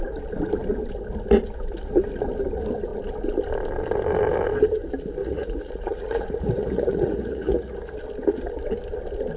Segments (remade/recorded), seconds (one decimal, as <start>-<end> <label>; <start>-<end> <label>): 0.0-5.2 recorded; 5.2-8.0 remade; 8.0-9.4 recorded